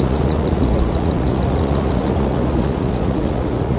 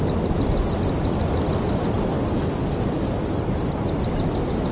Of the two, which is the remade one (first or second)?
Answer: first